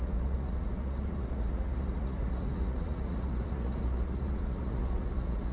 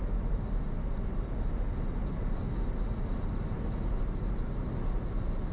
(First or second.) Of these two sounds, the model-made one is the first